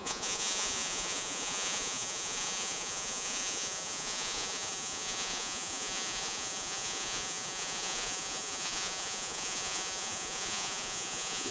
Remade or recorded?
remade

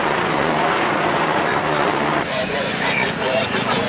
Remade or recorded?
remade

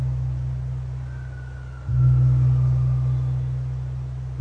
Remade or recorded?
recorded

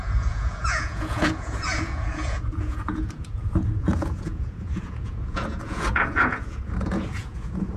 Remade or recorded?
remade